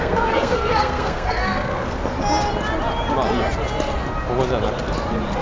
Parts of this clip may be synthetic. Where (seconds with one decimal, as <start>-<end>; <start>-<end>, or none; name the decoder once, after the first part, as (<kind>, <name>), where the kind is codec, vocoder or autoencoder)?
0.0-2.0 (codec, SNAC)